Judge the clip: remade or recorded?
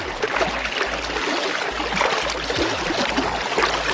recorded